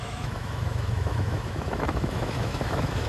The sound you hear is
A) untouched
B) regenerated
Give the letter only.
B